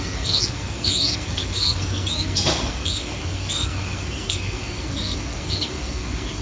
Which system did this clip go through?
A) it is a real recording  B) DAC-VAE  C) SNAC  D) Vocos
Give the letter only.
C